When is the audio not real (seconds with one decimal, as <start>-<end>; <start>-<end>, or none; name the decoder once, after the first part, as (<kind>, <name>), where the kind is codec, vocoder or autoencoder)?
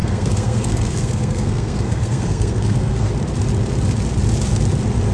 0.0-3.1 (codec, SNAC)